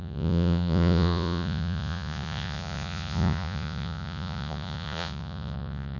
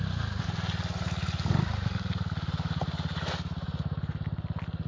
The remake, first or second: first